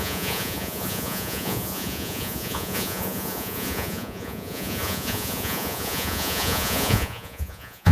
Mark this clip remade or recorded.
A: remade